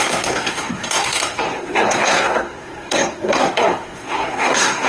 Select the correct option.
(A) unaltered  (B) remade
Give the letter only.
B